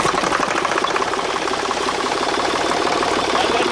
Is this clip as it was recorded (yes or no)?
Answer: no